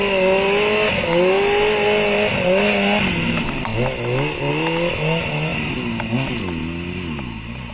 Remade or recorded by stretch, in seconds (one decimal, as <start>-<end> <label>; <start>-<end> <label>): 0.0-7.7 recorded